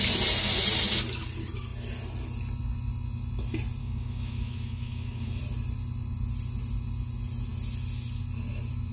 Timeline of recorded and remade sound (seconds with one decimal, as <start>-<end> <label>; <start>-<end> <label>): 0.0-3.8 recorded; 3.8-5.4 remade; 5.4-8.9 recorded

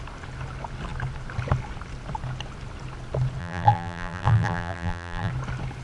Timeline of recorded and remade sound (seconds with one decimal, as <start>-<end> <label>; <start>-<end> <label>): 0.0-3.4 recorded; 3.4-5.3 remade; 5.3-5.8 recorded

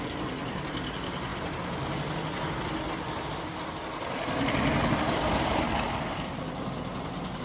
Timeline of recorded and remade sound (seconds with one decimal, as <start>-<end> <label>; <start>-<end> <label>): 0.0-7.4 recorded

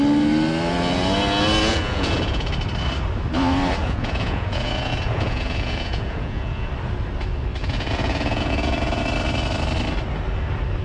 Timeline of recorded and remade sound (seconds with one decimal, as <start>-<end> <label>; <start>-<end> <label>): 0.0-1.7 recorded; 1.7-2.5 remade; 2.5-3.8 recorded; 3.8-6.7 remade; 6.7-7.6 recorded; 7.6-9.0 remade; 9.0-10.8 recorded

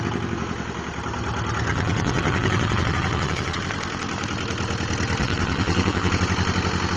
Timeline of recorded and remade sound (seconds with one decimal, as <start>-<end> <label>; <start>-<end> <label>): 0.0-1.7 recorded; 1.7-3.6 remade; 3.6-5.2 recorded; 5.2-6.1 remade; 6.1-7.0 recorded